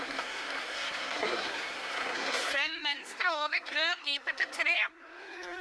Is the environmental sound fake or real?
fake